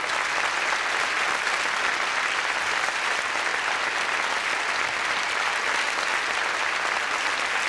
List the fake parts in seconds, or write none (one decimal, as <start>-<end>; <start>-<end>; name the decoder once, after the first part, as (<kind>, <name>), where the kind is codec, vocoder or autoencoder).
none